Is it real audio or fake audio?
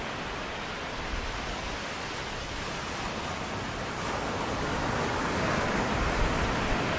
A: real